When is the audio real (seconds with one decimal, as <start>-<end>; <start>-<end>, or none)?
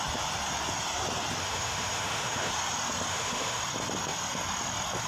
0.0-1.4; 2.5-3.1; 3.6-5.1